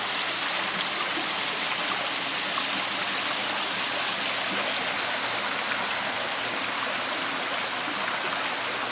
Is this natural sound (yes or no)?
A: yes